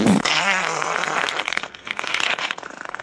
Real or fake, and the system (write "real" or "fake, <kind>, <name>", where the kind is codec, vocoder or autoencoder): fake, codec, SNAC